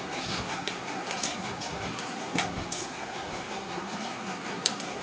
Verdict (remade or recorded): remade